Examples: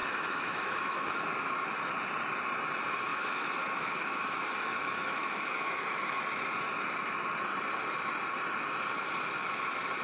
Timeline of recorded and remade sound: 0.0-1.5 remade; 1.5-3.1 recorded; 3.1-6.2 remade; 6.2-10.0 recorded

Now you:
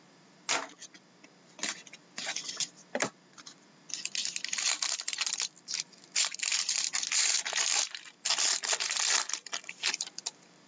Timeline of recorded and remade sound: 0.0-10.7 recorded

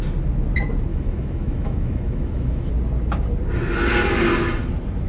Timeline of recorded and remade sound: 0.0-0.9 recorded; 0.9-2.7 remade; 2.7-5.1 recorded

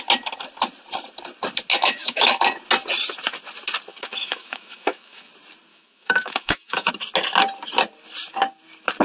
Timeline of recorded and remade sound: 0.0-1.7 recorded; 1.7-2.4 remade; 2.4-3.9 recorded; 3.9-5.3 remade; 5.3-5.7 recorded; 5.7-6.9 remade; 6.9-9.0 recorded